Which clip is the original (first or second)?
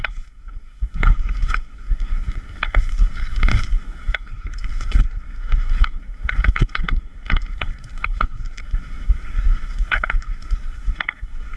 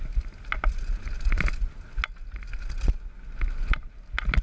second